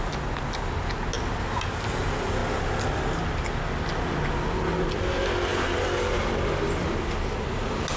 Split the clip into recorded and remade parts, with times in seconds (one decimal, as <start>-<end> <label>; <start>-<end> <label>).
0.0-5.5 recorded; 5.5-6.2 remade; 6.2-8.0 recorded